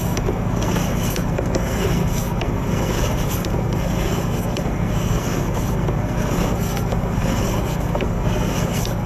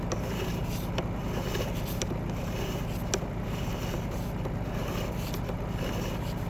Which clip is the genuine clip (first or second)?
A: second